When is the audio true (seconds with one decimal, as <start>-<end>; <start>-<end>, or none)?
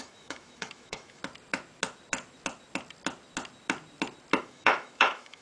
1.2-4.4